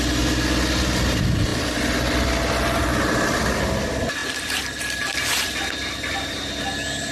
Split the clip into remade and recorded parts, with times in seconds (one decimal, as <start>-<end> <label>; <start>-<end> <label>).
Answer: 0.0-7.1 recorded